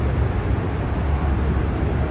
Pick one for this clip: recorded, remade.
recorded